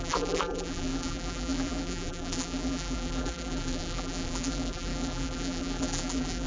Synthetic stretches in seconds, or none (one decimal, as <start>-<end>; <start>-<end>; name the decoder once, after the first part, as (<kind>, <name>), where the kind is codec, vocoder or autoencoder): 0.0-6.5 (vocoder, BigVGAN v2)